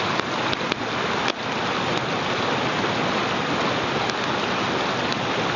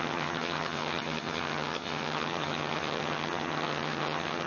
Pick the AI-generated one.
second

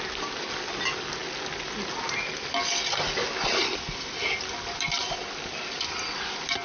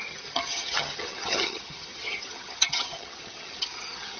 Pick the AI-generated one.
second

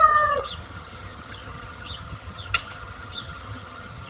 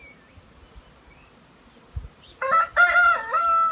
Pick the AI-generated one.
first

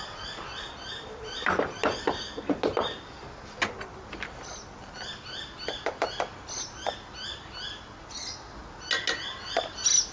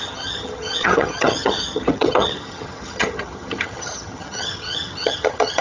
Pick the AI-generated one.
second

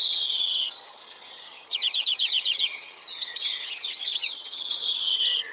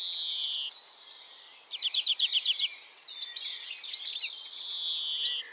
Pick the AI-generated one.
first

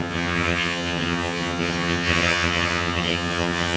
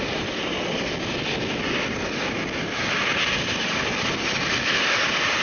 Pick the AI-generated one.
first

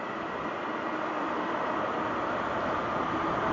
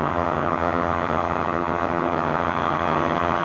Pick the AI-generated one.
second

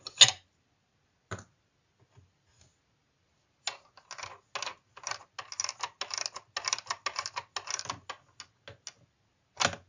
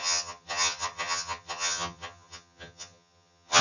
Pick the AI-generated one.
second